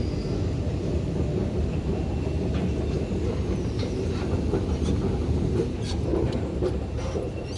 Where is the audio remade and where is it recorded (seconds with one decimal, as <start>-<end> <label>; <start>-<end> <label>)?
0.0-1.4 recorded; 1.4-2.1 remade; 2.1-6.1 recorded; 6.1-7.6 remade